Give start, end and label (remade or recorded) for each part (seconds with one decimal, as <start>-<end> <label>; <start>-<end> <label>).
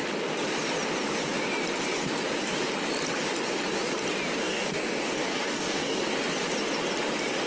0.0-4.4 recorded; 4.4-6.0 remade; 6.0-7.5 recorded